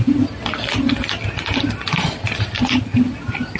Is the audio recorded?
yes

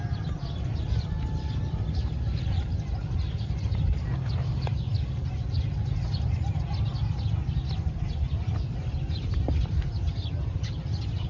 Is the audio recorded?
yes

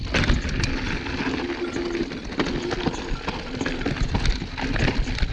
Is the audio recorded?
yes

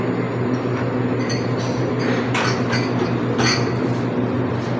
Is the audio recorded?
yes